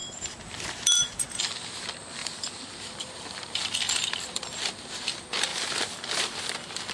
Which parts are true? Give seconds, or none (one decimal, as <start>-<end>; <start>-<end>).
1.4-2.2; 5.1-5.5; 6.4-6.9